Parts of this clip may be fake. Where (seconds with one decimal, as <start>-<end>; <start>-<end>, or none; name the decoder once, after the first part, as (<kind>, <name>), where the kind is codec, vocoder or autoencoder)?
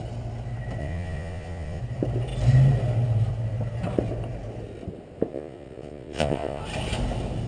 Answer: 0.8-1.8 (vocoder, Vocos); 5.3-6.6